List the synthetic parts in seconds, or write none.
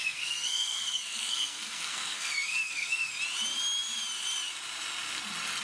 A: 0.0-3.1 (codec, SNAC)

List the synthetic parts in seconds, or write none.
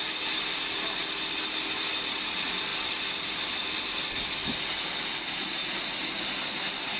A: none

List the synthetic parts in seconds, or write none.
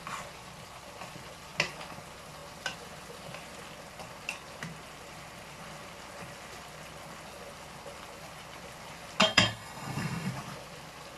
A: 9.2-10.3 (codec, SNAC)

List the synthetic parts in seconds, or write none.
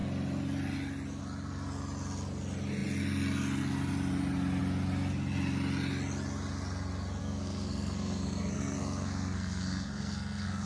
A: 7.2-10.7 (codec, SNAC)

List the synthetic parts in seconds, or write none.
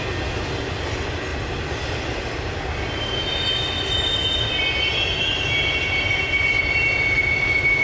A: none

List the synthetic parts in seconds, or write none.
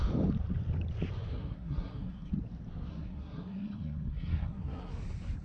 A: 1.3-2.3 (codec, SNAC); 2.9-4.9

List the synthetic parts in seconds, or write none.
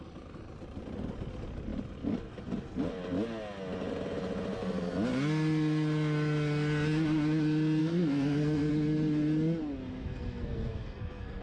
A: 7.8-8.7 (codec, SNAC); 10.1-11.4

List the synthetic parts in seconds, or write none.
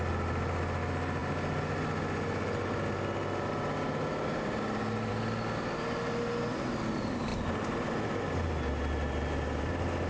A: none